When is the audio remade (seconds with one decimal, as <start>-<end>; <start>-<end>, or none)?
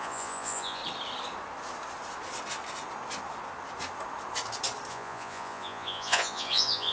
0.0-0.8; 4.9-6.9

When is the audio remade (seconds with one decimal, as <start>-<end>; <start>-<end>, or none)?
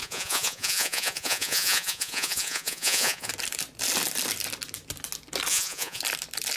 0.0-3.3; 5.5-6.0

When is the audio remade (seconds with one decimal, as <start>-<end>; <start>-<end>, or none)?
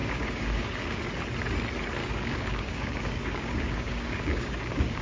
0.0-1.0; 2.0-5.0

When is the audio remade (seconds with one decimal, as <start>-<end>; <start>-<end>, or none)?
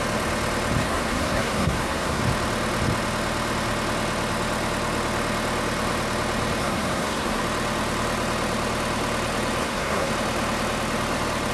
0.8-2.2; 6.6-7.4; 9.6-10.1